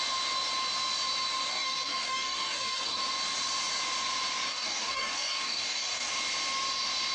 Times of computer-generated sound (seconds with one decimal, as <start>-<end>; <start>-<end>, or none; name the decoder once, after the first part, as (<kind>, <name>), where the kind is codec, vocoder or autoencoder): 1.5-3.0 (codec, DAC); 4.5-6.1